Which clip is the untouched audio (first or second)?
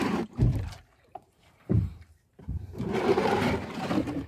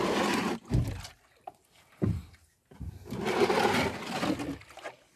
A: second